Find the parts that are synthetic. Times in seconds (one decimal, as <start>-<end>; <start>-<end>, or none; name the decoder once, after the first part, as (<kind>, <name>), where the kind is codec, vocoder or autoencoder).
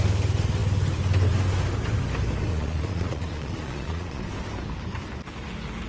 2.5-4.2 (vocoder, Vocos)